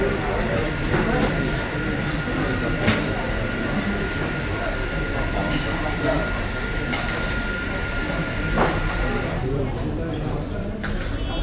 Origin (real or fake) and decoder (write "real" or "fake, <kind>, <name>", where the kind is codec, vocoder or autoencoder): real